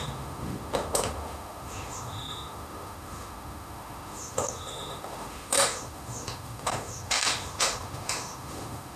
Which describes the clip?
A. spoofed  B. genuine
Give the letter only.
A